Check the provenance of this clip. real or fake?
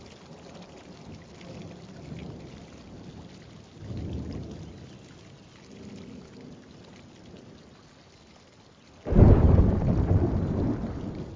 real